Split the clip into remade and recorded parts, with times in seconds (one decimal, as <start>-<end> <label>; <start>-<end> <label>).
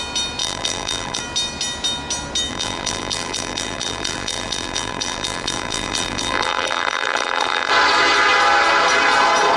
0.0-0.4 recorded; 0.4-1.2 remade; 1.2-2.5 recorded; 2.5-7.7 remade; 7.7-9.6 recorded